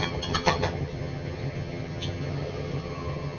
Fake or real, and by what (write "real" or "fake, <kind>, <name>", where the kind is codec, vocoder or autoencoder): fake, vocoder, HiFi-GAN